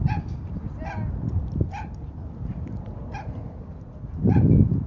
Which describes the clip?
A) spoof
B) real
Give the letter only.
B